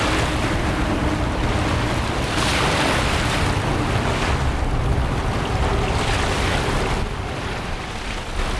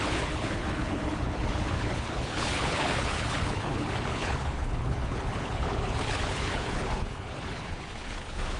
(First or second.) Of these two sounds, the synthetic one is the second